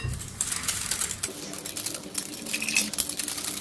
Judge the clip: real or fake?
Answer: real